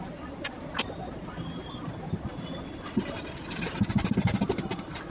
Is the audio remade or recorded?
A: recorded